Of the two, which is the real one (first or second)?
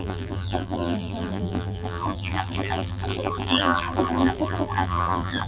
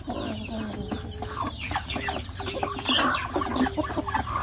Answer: second